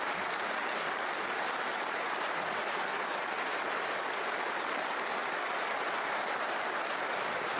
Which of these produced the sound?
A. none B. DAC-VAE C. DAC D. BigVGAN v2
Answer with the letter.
A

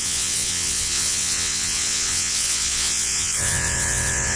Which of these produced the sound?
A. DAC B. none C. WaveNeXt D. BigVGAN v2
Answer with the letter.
C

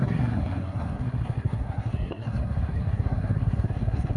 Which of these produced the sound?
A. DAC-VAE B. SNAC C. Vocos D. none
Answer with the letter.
B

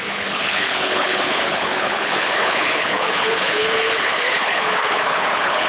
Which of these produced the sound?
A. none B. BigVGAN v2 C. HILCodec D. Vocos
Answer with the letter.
C